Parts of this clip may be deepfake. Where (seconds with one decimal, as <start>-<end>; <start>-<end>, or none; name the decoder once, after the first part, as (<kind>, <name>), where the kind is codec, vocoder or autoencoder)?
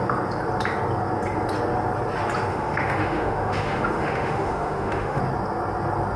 2.5-5.2 (autoencoder, DAC-VAE)